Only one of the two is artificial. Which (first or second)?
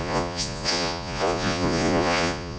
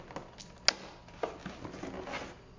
first